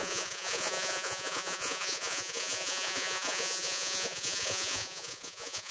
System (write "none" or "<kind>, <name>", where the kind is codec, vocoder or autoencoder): vocoder, Vocos